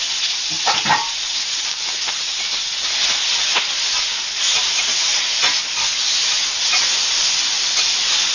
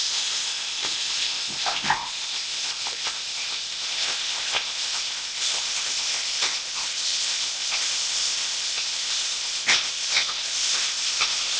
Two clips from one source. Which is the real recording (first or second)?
first